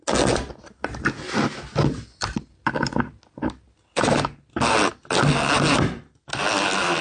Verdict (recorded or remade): recorded